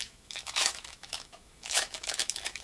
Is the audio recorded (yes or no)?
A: no